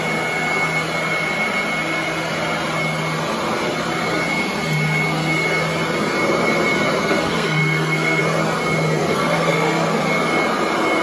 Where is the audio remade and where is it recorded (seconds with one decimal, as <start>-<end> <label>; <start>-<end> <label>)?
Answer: 0.0-7.0 recorded; 7.0-8.2 remade; 8.2-9.0 recorded; 9.0-10.0 remade; 10.0-11.0 recorded